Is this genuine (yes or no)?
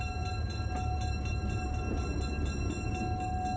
yes